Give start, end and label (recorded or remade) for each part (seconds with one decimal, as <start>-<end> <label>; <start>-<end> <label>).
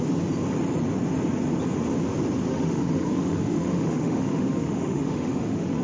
0.0-2.5 recorded; 2.5-5.8 remade